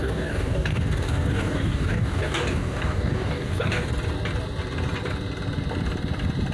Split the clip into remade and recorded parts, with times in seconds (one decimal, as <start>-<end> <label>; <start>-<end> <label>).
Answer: 0.0-3.9 remade; 3.9-6.5 recorded